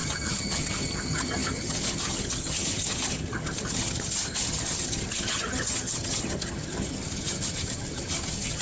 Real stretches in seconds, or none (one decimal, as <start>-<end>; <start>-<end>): none